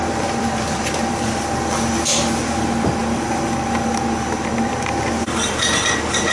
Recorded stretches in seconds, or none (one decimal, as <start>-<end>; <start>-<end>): 1.3-6.3